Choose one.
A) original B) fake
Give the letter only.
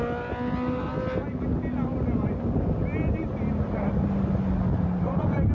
A